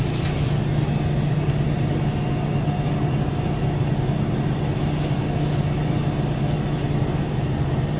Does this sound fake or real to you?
real